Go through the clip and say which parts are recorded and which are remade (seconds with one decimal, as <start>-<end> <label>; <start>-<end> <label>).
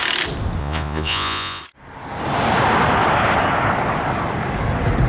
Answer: 0.0-0.6 recorded; 0.6-1.6 remade; 1.6-5.1 recorded